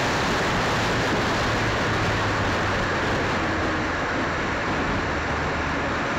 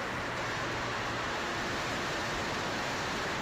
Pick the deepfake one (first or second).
second